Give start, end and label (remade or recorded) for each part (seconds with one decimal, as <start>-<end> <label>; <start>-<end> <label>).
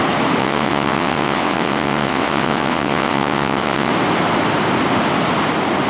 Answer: 0.0-0.4 recorded; 0.4-3.9 remade; 3.9-5.9 recorded